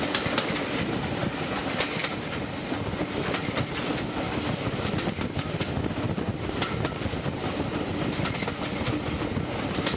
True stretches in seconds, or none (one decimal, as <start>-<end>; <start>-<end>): 0.0-10.0